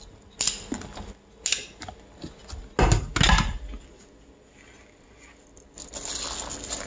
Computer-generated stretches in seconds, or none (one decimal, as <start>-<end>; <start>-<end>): none